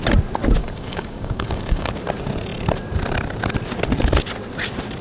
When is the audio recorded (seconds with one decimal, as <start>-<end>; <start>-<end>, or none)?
0.0-0.6; 1.9-5.0